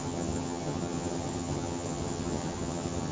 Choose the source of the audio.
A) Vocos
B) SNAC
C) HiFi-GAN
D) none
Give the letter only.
C